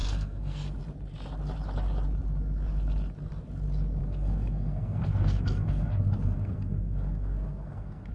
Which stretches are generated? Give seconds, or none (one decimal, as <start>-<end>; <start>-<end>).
0.0-0.8; 4.0-8.1